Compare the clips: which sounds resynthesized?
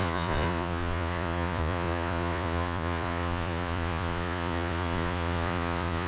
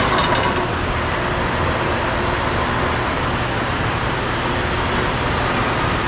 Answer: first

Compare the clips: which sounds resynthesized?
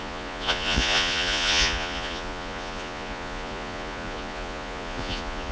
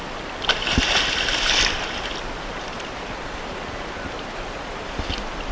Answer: first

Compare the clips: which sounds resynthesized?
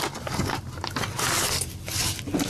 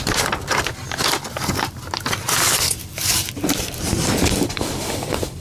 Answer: second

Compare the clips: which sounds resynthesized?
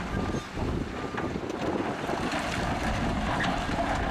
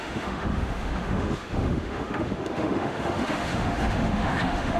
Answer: second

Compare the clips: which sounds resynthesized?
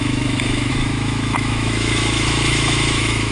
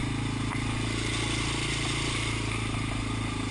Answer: first